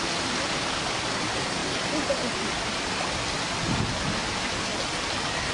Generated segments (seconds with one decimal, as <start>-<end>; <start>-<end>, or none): none

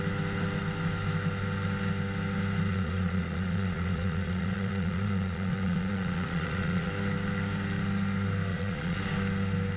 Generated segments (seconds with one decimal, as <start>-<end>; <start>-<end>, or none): 2.7-6.9; 8.5-9.0

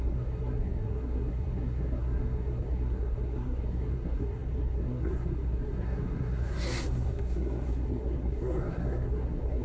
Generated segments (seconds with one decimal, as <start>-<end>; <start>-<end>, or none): 0.0-9.6